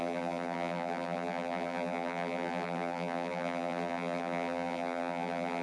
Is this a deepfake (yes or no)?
yes